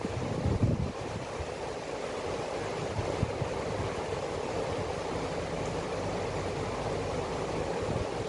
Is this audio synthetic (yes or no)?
yes